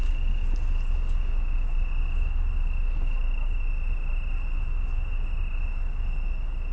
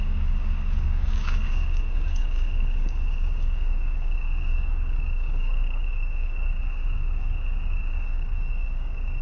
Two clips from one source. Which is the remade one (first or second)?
second